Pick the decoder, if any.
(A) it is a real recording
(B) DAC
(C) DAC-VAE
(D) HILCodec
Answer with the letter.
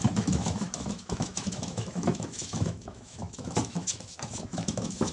C